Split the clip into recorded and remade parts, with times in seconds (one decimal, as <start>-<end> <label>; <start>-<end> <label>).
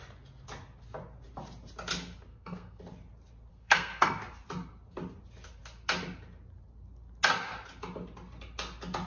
0.0-2.3 recorded; 2.3-2.8 remade; 2.8-3.5 recorded; 3.5-4.2 remade; 4.2-9.1 recorded